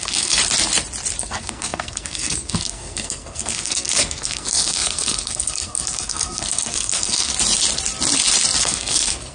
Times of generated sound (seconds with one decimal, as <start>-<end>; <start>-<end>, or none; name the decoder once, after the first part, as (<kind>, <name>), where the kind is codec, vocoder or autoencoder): 0.0-0.4 (codec, SNAC); 1.2-7.3; 8.6-9.3